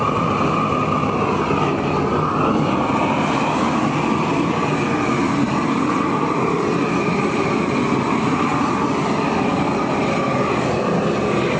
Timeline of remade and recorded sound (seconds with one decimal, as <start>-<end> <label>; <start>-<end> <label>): 0.0-11.6 recorded